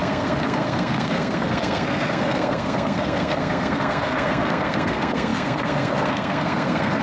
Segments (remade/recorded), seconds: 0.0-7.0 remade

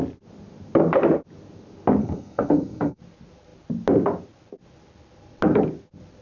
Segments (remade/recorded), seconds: 0.0-2.0 recorded; 2.0-3.0 remade; 3.0-6.2 recorded

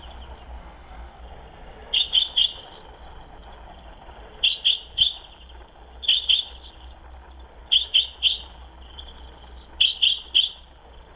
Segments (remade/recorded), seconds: 0.0-0.6 recorded; 0.6-1.2 remade; 1.2-11.2 recorded

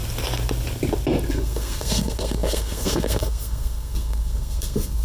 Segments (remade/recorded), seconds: 0.0-1.3 recorded; 1.3-5.0 remade

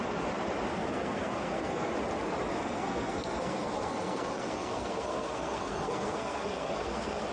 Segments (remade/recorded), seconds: 0.0-0.7 recorded; 0.7-1.9 remade; 1.9-2.5 recorded; 2.5-7.3 remade

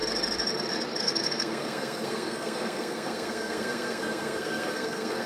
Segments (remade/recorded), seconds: 0.0-1.0 recorded; 1.0-5.3 remade